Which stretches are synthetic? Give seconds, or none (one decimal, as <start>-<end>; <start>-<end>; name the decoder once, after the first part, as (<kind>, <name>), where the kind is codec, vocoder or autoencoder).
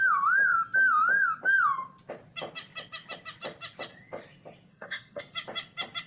4.7-5.2 (codec, SNAC)